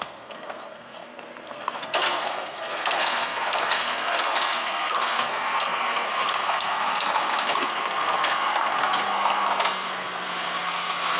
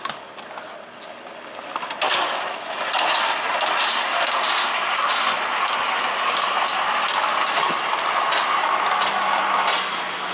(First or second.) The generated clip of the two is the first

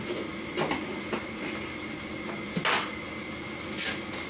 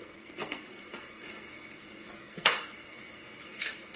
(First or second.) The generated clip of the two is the second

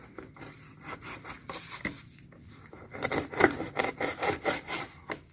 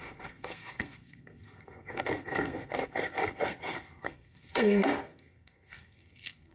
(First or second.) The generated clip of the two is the second